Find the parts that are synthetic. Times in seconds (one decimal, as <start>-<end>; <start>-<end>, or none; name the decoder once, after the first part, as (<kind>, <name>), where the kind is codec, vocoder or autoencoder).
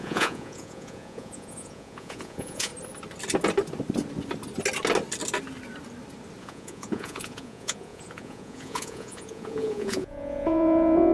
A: 0.0-2.7 (vocoder, Vocos); 6.4-11.1